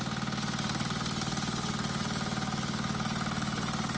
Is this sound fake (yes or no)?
no